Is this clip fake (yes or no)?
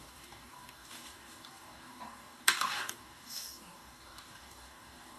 yes